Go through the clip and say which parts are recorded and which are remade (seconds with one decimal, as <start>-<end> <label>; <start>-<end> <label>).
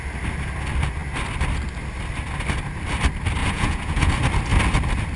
0.0-3.4 recorded; 3.4-4.1 remade; 4.1-5.2 recorded